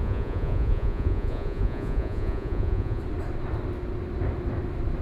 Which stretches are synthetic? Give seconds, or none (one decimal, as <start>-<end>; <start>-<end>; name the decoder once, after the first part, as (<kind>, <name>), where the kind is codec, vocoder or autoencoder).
0.0-3.0 (vocoder, Vocos)